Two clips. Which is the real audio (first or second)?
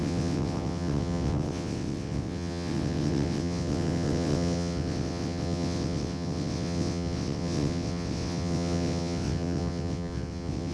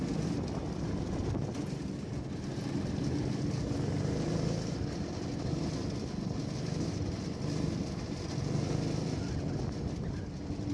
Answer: second